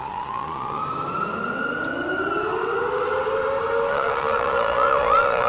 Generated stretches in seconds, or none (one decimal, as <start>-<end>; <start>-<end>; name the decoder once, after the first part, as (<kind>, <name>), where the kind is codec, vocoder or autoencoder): 0.0-0.8 (vocoder, Vocos); 3.9-5.5